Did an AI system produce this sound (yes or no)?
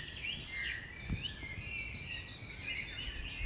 no